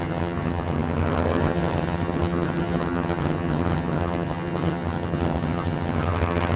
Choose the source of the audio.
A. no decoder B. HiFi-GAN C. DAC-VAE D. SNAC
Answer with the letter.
B